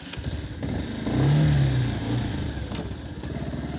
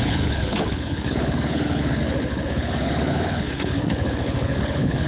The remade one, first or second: second